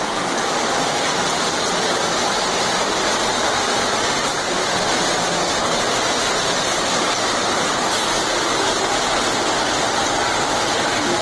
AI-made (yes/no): no